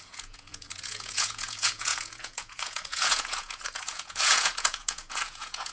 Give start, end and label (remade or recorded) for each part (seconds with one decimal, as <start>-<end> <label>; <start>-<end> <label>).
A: 0.0-5.7 remade